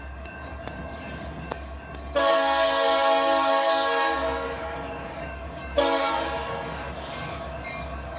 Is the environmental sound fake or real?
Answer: fake